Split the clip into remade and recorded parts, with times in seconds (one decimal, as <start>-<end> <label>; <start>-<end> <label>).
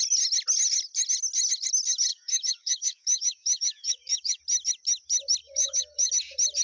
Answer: 0.0-2.1 recorded; 2.1-4.4 remade; 4.4-5.4 recorded; 5.4-6.1 remade; 6.1-6.6 recorded